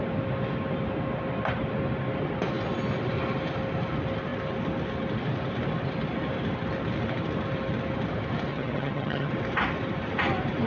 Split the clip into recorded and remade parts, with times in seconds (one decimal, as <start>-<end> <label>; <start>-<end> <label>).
0.0-8.5 recorded; 8.5-9.3 remade; 9.3-10.7 recorded